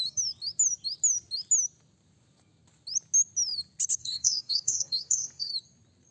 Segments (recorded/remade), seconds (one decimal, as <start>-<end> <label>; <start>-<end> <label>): 0.0-4.0 recorded; 4.0-5.5 remade; 5.5-6.1 recorded